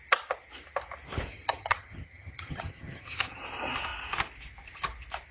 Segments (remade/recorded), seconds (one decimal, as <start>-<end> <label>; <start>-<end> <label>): 0.0-1.3 recorded; 1.3-3.4 remade; 3.4-5.3 recorded

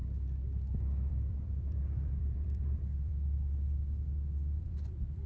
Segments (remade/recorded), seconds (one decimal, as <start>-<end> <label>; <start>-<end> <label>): 0.0-1.1 recorded; 1.1-3.1 remade; 3.1-4.6 recorded; 4.6-5.3 remade

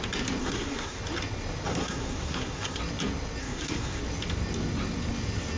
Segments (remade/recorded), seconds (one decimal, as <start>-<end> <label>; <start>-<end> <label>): 0.0-0.4 recorded; 0.4-1.0 remade; 1.0-1.7 recorded; 1.7-2.8 remade; 2.8-3.4 recorded; 3.4-4.0 remade; 4.0-5.6 recorded

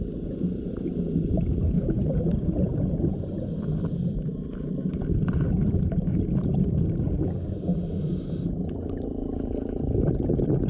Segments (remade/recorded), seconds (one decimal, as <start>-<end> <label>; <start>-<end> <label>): 0.0-1.6 recorded; 1.6-2.1 remade; 2.1-10.7 recorded